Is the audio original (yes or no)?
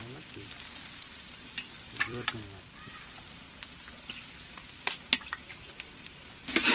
no